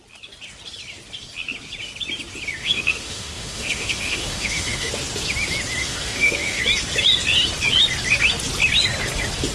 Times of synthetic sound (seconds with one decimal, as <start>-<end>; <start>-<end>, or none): 2.6-4.9; 5.8-6.6